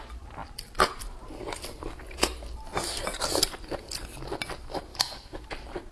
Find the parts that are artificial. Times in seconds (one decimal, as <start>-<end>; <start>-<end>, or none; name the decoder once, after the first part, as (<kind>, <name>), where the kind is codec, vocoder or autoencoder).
4.9-5.5 (autoencoder, DAC-VAE)